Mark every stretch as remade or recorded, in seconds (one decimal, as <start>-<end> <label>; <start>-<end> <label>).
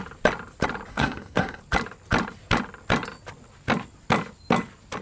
0.0-0.9 recorded; 0.9-1.6 remade; 1.6-5.0 recorded